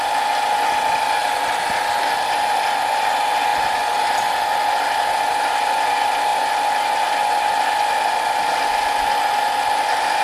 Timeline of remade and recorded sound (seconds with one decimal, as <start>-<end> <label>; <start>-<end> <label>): 0.0-10.2 recorded